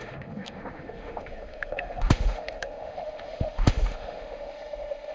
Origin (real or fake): fake